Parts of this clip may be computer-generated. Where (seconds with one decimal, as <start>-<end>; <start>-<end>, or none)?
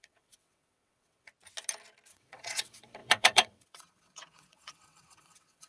0.0-1.3; 2.1-5.7